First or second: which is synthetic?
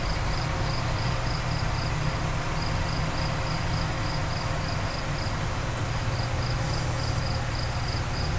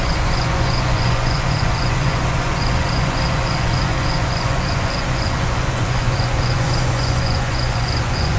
second